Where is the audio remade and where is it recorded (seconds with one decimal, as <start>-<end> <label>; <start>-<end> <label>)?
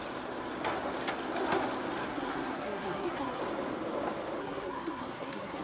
0.0-2.1 recorded; 2.1-3.4 remade; 3.4-4.4 recorded; 4.4-5.6 remade